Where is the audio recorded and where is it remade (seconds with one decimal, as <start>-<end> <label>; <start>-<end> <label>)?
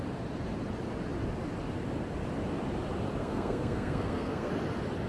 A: 0.0-3.2 recorded; 3.2-4.5 remade; 4.5-5.1 recorded